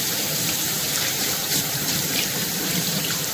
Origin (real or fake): fake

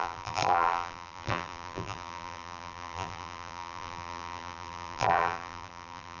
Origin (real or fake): fake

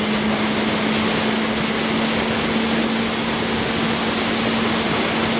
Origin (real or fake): real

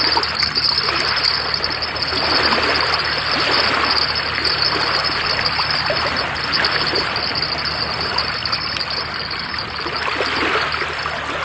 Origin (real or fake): real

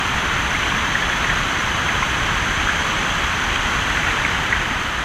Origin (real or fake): fake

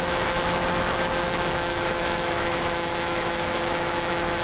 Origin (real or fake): fake